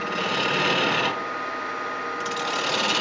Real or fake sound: real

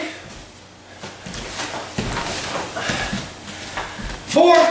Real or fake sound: real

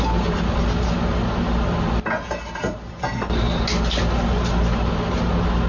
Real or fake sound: real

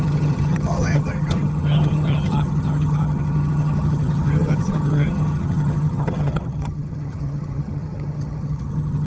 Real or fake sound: fake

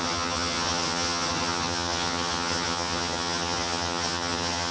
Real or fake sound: fake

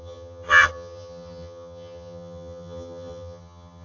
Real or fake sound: fake